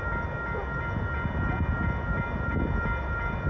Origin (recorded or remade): recorded